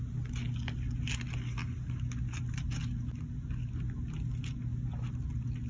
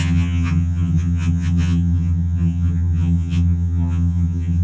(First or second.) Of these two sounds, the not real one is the second